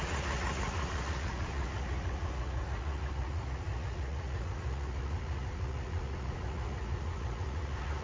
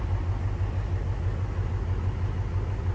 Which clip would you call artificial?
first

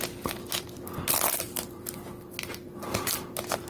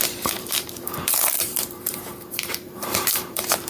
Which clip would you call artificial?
second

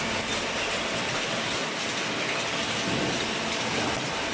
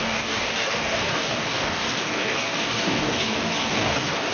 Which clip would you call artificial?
second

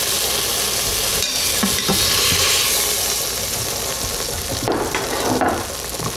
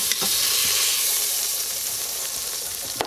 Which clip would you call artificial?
second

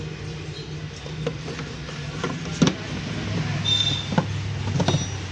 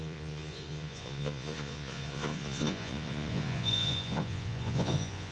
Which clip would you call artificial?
second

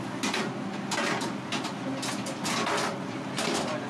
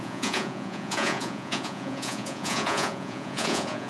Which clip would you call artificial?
second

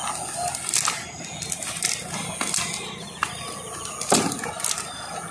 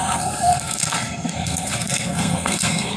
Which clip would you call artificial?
second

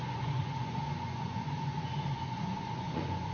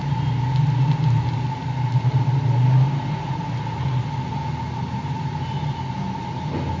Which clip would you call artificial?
first